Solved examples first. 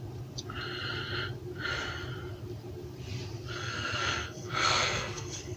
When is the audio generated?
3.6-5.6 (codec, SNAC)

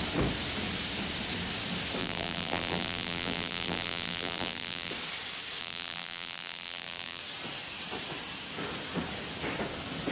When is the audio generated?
2.0-4.9 (vocoder, BigVGAN v2); 5.6-7.2

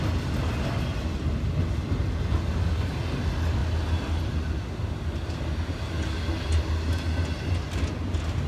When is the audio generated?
none

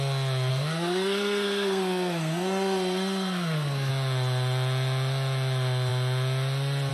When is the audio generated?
0.5-3.9 (codec, SNAC)

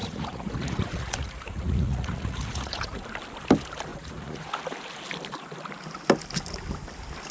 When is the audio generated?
0.0-3.0 (vocoder, Vocos); 3.9-4.5

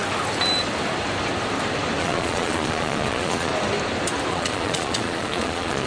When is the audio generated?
2.0-3.5 (vocoder, Vocos); 4.3-5.9

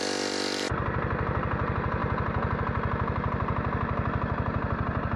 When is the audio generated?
none